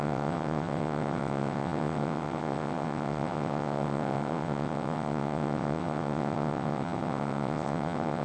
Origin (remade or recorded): remade